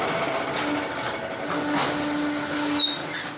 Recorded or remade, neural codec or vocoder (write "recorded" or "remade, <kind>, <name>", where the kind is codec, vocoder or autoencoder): recorded